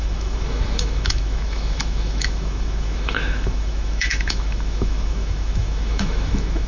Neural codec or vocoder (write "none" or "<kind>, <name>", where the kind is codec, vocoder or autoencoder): autoencoder, DAC-VAE